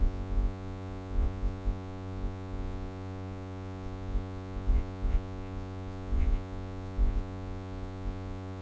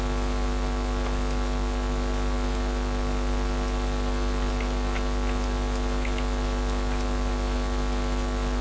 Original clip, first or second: second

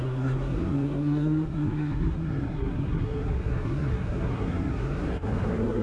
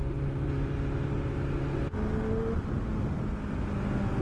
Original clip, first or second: second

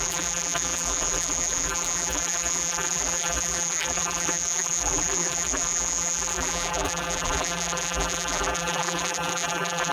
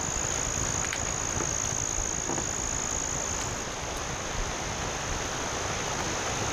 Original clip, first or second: second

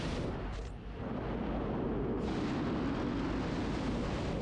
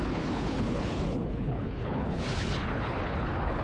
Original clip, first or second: first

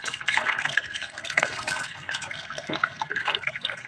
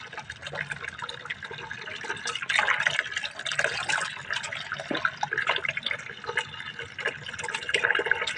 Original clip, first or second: second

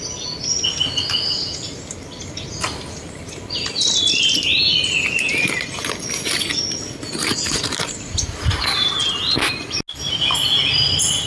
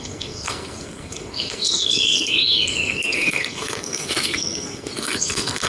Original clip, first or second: first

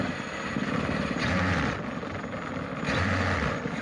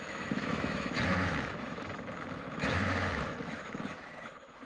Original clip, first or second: first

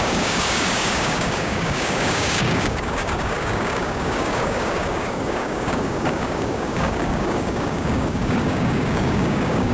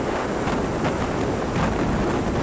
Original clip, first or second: second